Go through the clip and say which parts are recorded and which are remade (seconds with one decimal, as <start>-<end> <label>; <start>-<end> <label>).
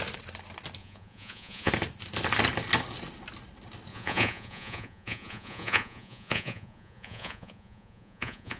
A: 0.0-0.8 recorded; 0.8-1.7 remade; 1.7-3.9 recorded; 3.9-8.6 remade